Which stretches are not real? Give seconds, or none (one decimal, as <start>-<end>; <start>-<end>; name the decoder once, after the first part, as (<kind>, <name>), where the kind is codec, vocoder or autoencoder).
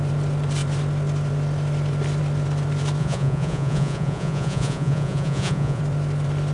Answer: 3.0-5.8 (vocoder, Vocos)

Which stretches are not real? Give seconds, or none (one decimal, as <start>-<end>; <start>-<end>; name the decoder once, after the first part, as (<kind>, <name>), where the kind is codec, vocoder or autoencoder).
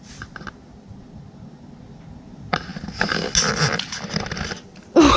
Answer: none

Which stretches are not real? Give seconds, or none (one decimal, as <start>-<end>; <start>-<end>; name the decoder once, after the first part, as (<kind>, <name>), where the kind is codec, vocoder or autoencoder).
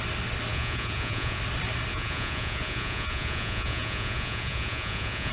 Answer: 0.5-1.4 (vocoder, Vocos); 1.9-5.3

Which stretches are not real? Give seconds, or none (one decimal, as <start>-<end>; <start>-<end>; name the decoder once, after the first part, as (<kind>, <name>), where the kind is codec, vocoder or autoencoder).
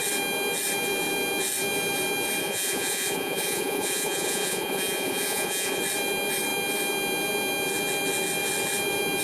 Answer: 2.4-5.8 (vocoder, Vocos)